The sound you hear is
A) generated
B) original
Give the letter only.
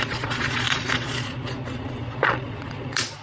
A